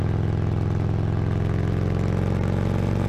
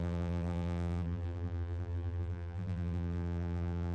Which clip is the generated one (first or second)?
second